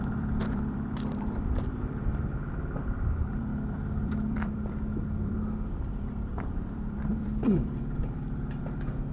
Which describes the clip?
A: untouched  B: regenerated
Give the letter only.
B